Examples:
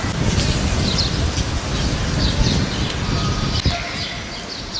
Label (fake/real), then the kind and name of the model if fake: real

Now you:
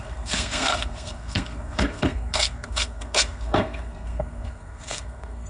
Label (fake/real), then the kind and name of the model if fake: fake, codec, SNAC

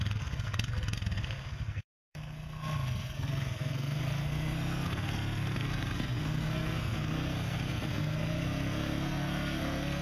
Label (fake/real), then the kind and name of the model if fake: fake, codec, SNAC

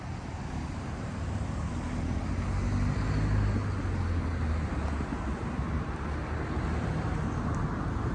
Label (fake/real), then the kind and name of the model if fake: real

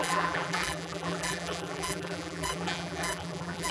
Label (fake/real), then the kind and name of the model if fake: fake, vocoder, BigVGAN v2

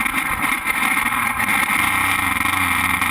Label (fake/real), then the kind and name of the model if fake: real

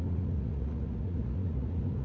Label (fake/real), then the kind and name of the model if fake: fake, vocoder, Vocos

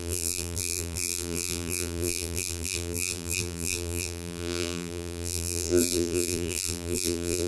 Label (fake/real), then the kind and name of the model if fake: fake, vocoder, BigVGAN v2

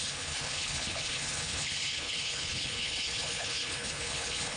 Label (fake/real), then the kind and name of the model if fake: fake, codec, HILCodec